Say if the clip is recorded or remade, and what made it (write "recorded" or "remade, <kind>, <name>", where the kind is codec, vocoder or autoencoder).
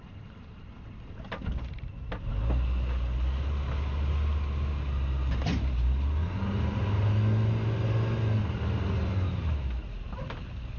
recorded